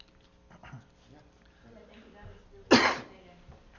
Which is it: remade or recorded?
recorded